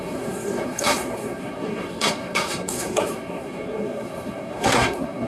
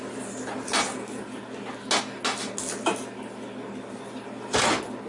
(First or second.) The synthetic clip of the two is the first